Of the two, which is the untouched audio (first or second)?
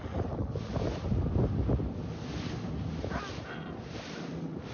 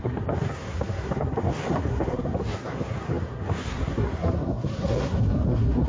first